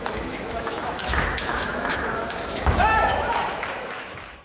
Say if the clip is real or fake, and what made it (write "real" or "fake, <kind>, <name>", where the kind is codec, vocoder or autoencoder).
fake, autoencoder, DAC-VAE